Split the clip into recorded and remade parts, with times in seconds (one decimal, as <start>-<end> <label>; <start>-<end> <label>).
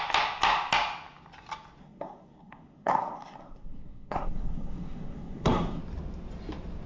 0.0-1.8 recorded; 1.8-5.8 remade; 5.8-6.9 recorded